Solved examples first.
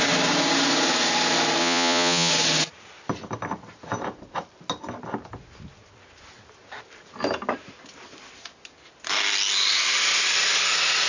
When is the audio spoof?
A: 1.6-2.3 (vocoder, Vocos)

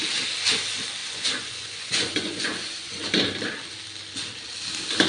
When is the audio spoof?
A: 1.0-3.0 (vocoder, Vocos)

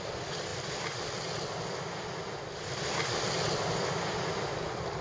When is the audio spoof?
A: none

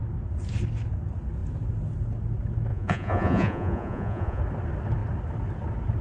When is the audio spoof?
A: 2.7-4.4 (vocoder, Vocos)

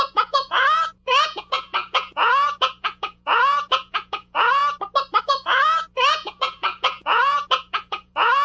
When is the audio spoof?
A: 0.0-4.6 (vocoder, Vocos); 5.2-8.4

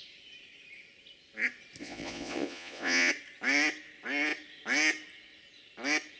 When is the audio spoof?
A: 1.8-3.1 (vocoder, Vocos)

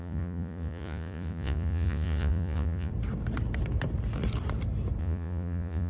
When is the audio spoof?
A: 0.0-2.9 (vocoder, Vocos); 5.0-5.9

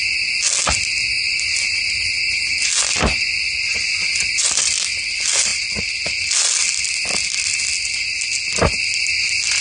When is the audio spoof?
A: none